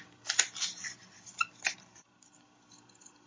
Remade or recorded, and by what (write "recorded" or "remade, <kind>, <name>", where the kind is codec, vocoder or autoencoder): recorded